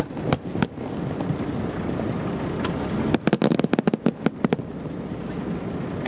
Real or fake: real